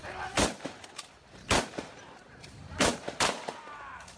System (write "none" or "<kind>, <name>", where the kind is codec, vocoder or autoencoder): vocoder, BigVGAN v2